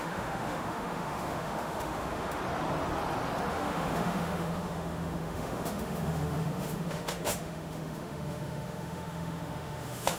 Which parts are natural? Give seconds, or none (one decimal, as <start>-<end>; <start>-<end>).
2.4-3.5

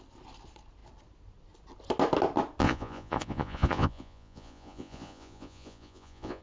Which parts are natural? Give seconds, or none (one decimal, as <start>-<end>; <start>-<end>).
0.0-2.6

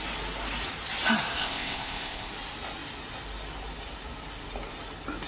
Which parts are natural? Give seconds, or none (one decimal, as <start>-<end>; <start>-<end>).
0.0-1.4; 2.3-5.3

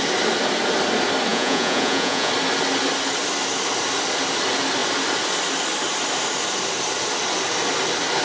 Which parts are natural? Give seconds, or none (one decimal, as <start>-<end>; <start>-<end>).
0.0-1.3; 2.3-8.2

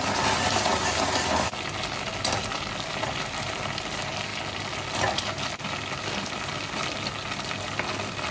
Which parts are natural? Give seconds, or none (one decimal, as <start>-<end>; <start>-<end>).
0.0-8.3

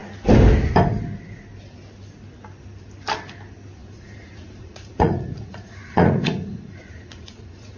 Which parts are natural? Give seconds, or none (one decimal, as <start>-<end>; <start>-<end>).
0.0-3.8

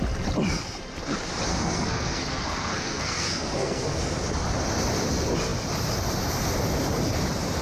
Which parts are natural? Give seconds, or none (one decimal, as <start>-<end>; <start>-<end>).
0.0-1.5; 4.0-7.6